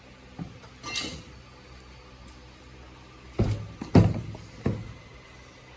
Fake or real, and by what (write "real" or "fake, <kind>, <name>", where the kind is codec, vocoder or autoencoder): real